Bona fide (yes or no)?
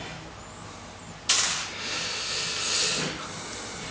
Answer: yes